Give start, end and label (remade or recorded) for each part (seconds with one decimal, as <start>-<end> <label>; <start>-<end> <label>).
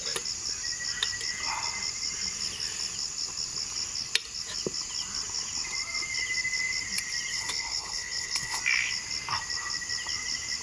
0.0-7.3 recorded; 7.3-8.6 remade; 8.6-10.6 recorded